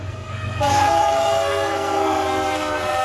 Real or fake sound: fake